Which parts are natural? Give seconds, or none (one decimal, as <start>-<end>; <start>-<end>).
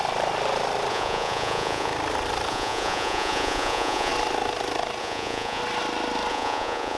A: 0.0-0.9; 1.9-2.5; 4.1-5.0; 5.6-6.3